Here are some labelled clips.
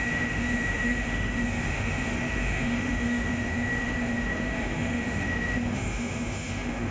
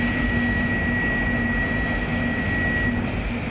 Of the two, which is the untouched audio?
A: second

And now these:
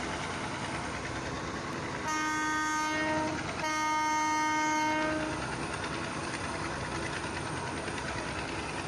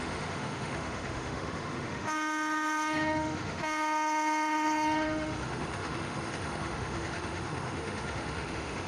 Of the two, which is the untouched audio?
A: first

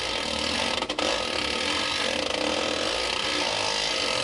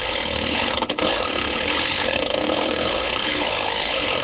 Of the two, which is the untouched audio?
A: first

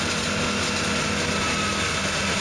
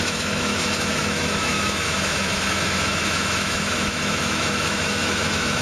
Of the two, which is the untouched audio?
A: first